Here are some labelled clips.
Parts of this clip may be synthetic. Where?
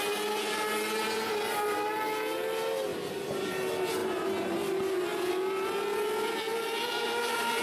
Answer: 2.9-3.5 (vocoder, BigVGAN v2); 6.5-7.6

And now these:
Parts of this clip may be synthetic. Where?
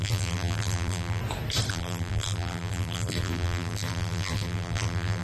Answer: 0.0-1.2 (vocoder, BigVGAN v2); 1.7-5.2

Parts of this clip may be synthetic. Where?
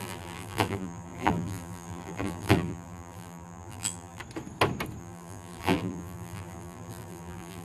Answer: 0.0-4.2 (vocoder, BigVGAN v2); 5.0-7.6